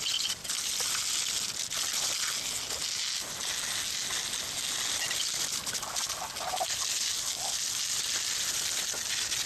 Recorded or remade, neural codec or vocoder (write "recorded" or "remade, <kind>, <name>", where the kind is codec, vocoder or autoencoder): recorded